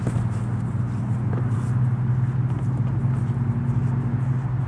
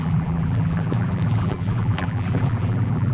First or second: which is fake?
second